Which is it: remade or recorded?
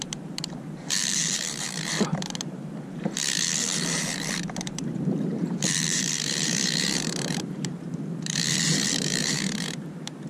remade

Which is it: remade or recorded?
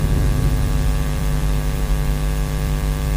remade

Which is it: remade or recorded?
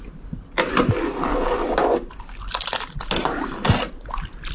recorded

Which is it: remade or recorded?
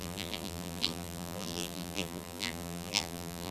remade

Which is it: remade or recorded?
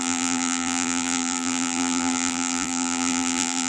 remade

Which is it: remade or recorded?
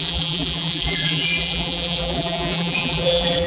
remade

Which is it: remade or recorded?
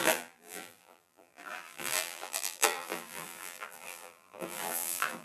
remade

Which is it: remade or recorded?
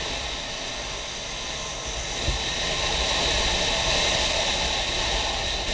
recorded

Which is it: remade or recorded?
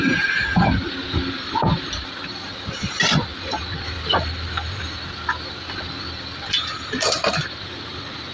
recorded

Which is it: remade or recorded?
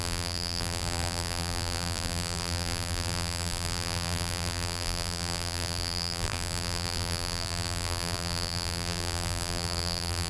remade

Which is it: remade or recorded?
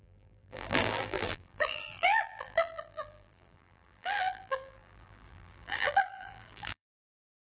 remade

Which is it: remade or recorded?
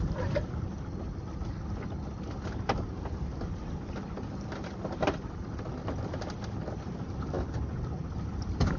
recorded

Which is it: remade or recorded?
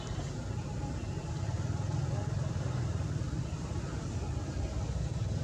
recorded